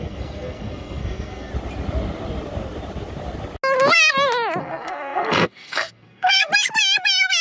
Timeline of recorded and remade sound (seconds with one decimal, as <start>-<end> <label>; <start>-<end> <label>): 0.0-1.5 remade; 1.5-4.6 recorded; 4.6-6.5 remade; 6.5-7.4 recorded